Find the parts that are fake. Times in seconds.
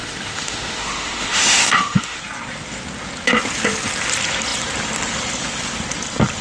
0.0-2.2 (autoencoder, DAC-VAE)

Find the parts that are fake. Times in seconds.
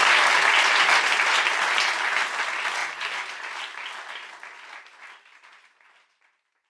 none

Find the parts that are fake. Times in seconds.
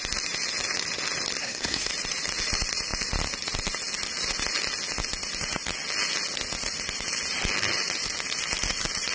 1.4-1.9 (codec, SNAC)